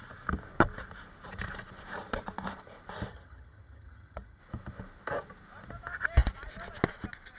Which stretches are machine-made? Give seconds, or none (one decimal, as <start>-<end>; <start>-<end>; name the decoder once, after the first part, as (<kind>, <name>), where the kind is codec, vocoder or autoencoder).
3.1-4.4 (vocoder, HiFi-GAN)